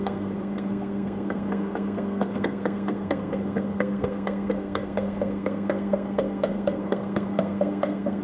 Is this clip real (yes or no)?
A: no